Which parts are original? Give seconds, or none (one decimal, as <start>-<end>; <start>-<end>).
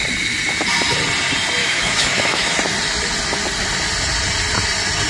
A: 0.0-1.6; 2.5-5.1